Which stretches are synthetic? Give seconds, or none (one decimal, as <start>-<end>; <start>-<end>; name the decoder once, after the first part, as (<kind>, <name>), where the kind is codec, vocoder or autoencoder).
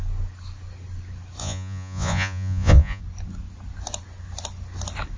1.4-3.0 (vocoder, Vocos)